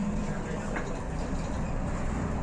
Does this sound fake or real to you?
fake